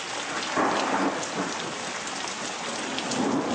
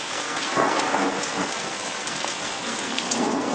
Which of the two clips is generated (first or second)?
second